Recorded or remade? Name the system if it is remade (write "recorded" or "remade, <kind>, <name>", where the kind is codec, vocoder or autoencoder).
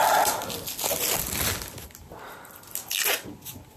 recorded